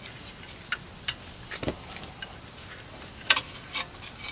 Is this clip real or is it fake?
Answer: real